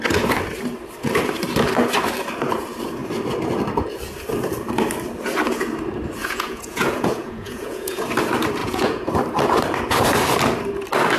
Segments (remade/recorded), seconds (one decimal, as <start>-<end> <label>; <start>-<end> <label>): 0.0-6.2 recorded; 6.2-8.0 remade; 8.0-8.6 recorded; 8.6-9.1 remade; 9.1-11.2 recorded